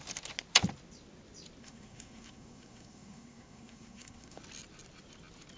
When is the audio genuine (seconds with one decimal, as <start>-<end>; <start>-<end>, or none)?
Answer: 0.0-1.6; 4.4-5.6